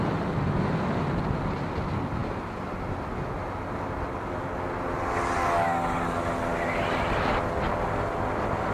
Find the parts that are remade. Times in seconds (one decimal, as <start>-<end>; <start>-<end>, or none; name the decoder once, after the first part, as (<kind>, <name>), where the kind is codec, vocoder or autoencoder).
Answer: none